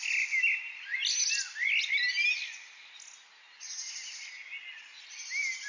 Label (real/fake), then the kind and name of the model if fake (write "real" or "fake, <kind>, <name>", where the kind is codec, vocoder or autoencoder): real